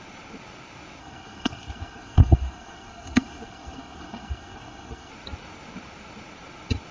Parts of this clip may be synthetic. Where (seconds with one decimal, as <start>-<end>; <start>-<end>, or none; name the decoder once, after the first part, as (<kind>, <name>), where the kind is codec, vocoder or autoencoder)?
1.0-5.1 (codec, SNAC)